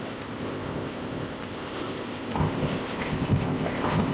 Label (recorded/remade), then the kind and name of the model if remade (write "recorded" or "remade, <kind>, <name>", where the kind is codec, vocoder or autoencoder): remade, codec, ZipCodec